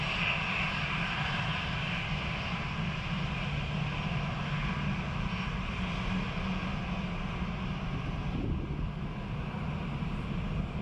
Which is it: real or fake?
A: real